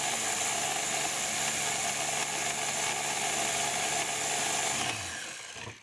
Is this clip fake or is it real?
real